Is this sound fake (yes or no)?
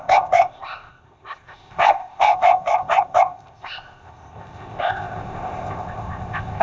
yes